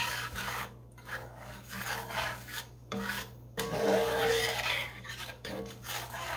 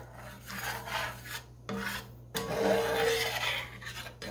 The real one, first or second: second